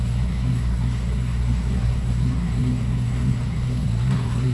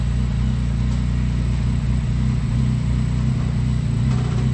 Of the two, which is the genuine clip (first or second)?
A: second